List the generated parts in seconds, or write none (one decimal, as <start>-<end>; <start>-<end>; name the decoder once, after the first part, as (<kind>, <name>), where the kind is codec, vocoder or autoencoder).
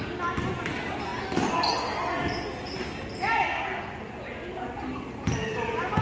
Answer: none